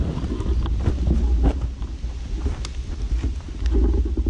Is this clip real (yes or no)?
yes